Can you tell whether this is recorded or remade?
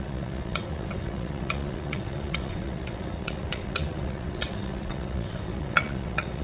remade